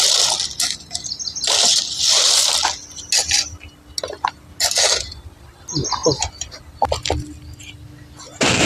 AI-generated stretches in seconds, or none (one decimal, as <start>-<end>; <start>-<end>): 6.0-6.6